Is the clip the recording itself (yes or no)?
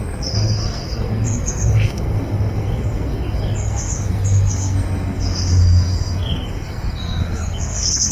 no